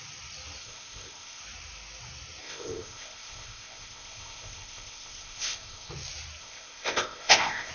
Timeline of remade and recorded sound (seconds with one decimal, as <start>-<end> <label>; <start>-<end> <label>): 0.0-0.6 recorded; 0.6-1.4 remade; 1.4-2.4 recorded; 2.4-5.9 remade; 5.9-6.4 recorded; 6.4-7.7 remade